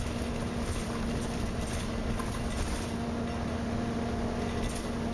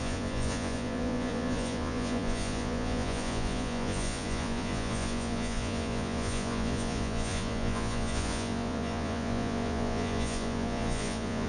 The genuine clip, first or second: first